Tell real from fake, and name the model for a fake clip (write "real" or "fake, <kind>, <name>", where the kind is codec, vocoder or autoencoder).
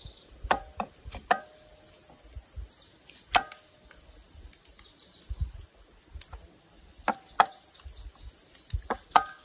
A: real